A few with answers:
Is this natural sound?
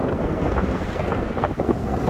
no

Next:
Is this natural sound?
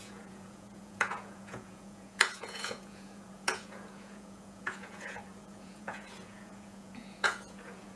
no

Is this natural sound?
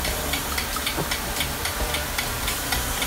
no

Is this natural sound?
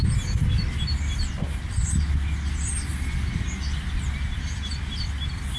yes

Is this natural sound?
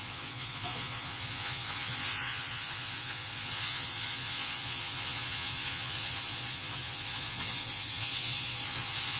no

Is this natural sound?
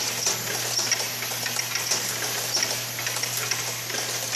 yes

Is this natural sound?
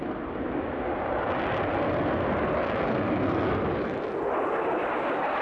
yes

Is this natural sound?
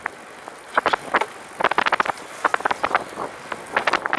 yes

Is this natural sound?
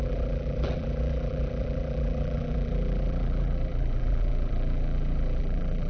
no